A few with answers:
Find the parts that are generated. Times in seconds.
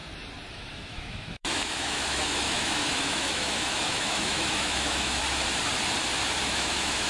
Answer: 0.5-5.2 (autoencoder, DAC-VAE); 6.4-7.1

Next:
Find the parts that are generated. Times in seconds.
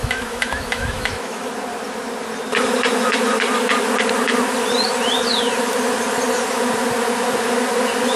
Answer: 0.0-1.5 (autoencoder, DAC-VAE)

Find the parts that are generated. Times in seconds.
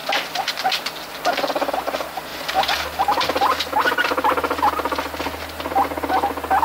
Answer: none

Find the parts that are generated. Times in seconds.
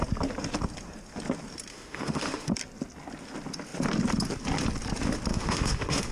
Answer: 1.7-2.5 (autoencoder, DAC-VAE); 5.3-6.1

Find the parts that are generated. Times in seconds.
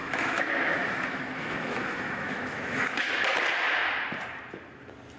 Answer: 0.0-3.1 (autoencoder, DAC-VAE)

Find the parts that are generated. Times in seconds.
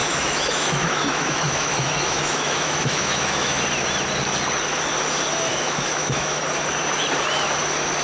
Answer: 0.0-3.6 (autoencoder, DAC-VAE); 5.5-6.4